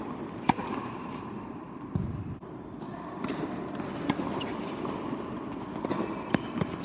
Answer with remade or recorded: recorded